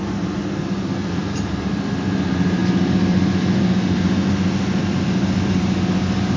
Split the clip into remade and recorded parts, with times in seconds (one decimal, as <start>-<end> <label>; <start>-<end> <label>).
0.0-2.6 remade; 2.6-6.4 recorded